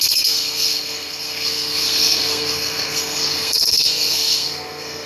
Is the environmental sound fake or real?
fake